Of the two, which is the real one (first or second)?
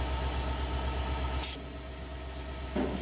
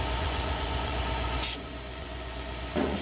first